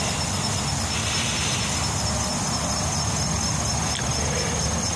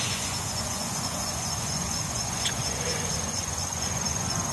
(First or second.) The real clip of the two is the first